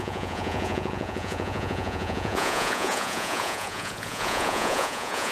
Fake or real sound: fake